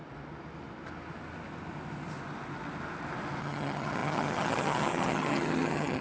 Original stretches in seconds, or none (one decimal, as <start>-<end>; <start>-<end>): 0.0-3.4